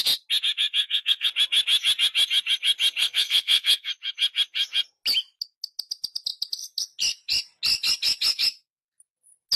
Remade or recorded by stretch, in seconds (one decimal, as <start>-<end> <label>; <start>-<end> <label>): 0.0-0.8 recorded; 0.8-1.3 remade; 1.3-3.0 recorded; 3.0-3.9 remade; 3.9-9.6 recorded